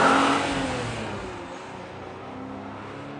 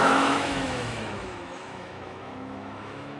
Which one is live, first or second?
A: first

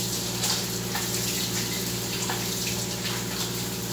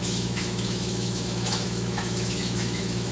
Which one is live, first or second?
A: first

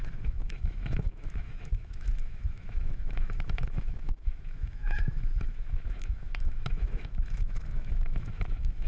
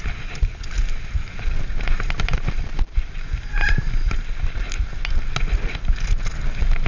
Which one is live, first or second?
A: second